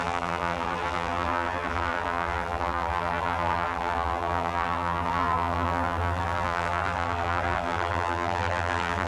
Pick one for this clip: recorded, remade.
remade